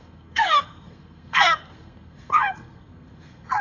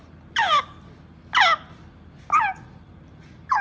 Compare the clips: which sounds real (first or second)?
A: second